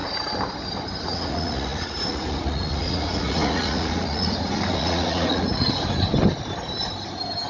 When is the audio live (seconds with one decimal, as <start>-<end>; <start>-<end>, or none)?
0.0-1.0; 6.1-7.5